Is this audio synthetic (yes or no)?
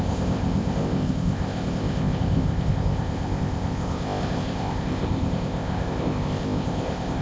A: yes